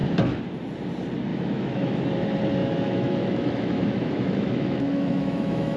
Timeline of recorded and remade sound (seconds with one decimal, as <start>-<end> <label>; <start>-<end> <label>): 0.0-1.3 recorded; 1.3-2.0 remade; 2.0-2.6 recorded; 2.6-5.8 remade